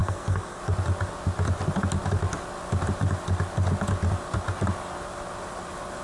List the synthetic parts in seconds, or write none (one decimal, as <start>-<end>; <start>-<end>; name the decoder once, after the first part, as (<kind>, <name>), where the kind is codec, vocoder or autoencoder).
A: 0.0-0.6 (codec, SNAC)